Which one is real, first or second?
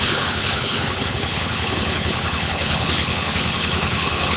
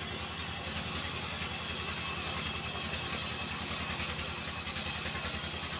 second